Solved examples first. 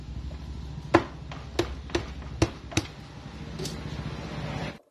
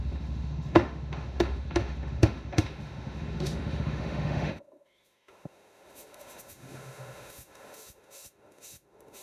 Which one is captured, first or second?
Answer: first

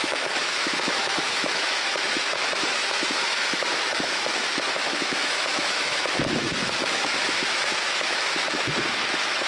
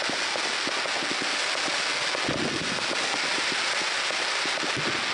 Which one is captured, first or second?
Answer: second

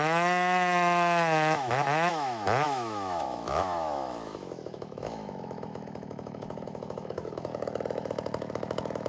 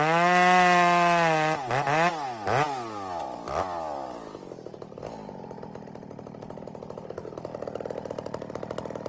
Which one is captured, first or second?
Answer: second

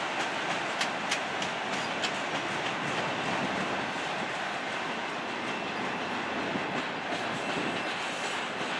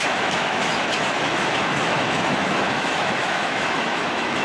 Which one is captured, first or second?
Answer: first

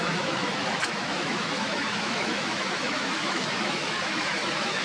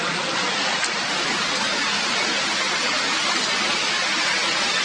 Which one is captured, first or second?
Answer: second